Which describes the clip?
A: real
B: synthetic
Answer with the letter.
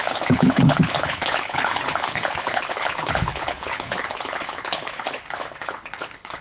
B